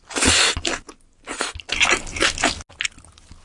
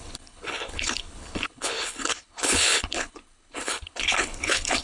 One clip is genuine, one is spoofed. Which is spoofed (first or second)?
second